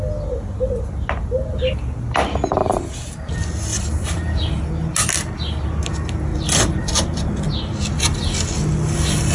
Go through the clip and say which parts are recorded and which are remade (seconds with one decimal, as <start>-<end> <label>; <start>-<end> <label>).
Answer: 0.0-2.6 recorded; 2.6-3.3 remade; 3.3-3.7 recorded; 3.7-4.6 remade; 4.6-6.3 recorded; 6.3-7.2 remade; 7.2-9.3 recorded